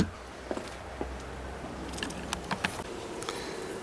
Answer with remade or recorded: recorded